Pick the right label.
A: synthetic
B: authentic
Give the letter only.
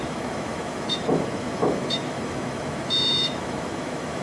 A